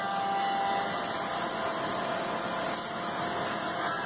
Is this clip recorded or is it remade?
recorded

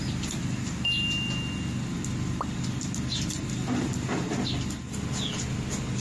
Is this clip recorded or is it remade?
recorded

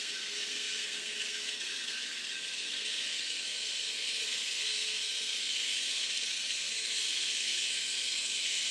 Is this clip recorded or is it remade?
remade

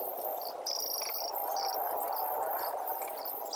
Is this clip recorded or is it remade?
recorded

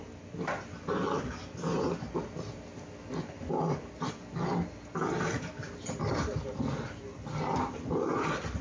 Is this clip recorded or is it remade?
recorded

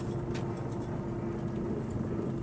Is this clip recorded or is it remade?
recorded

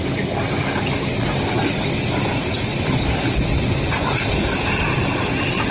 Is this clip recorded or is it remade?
recorded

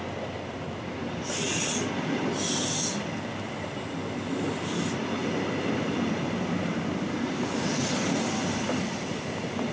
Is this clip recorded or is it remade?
recorded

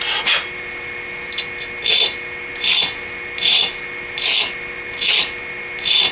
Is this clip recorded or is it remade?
recorded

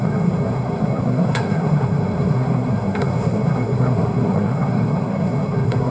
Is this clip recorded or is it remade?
remade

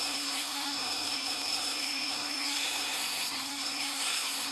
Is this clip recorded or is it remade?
remade